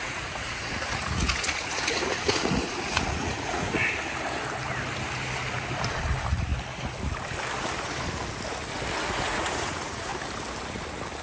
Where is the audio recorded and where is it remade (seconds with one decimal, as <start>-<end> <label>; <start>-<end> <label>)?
0.0-3.8 remade; 3.8-5.9 recorded; 5.9-6.5 remade; 6.5-9.1 recorded; 9.1-10.1 remade; 10.1-11.2 recorded